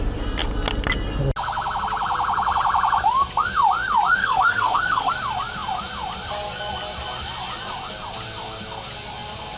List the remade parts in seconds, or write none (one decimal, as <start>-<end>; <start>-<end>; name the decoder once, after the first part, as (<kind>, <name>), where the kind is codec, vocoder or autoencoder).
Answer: 4.2-5.1 (codec, SNAC)